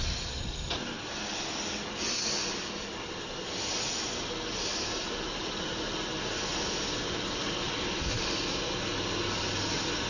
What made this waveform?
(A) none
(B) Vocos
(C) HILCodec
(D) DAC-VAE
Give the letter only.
A